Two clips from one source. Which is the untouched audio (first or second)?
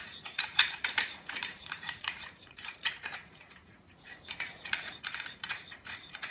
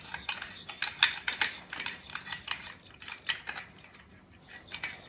second